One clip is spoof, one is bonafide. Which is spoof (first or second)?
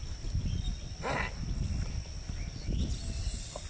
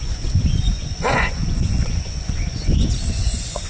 second